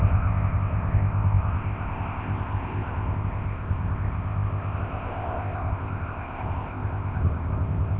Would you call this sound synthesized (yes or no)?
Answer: yes